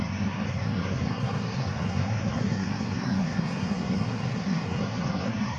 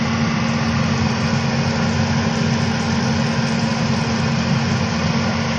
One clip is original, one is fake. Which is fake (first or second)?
first